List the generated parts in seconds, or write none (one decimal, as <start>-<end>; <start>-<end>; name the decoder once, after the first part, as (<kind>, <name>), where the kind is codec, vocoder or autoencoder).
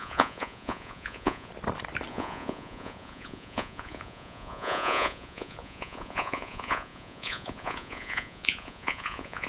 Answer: 0.0-1.5 (vocoder, Vocos); 2.1-9.5